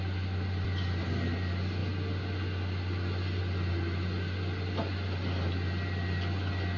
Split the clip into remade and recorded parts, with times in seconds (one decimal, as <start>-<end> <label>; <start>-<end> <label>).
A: 0.0-6.8 recorded